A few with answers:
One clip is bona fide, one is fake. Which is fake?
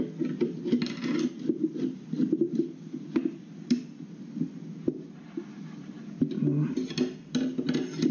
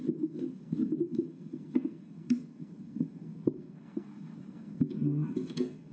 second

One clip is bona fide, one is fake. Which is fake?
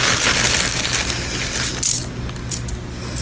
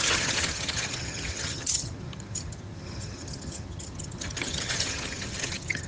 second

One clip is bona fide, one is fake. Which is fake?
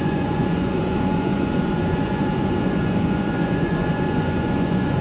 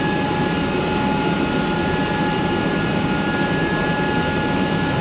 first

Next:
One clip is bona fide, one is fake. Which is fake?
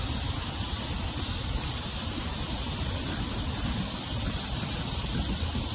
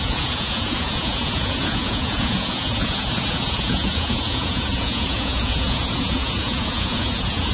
second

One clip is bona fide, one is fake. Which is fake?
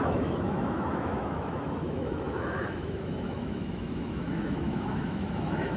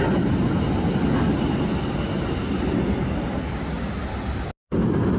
first